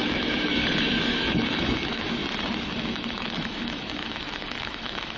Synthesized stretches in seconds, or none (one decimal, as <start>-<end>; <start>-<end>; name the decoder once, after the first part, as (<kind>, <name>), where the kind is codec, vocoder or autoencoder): 0.0-2.2 (autoencoder, DAC-VAE); 2.9-5.2